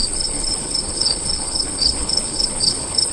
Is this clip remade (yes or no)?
yes